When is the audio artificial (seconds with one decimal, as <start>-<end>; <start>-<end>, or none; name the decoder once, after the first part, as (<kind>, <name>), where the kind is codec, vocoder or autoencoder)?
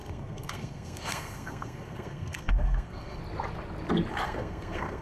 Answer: 0.0-3.2 (codec, SNAC); 4.1-5.0